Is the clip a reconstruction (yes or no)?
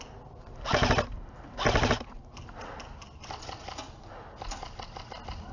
no